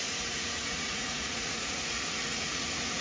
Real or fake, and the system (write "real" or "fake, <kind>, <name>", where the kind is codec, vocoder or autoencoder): fake, vocoder, Vocos